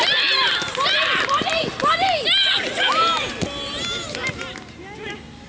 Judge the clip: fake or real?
real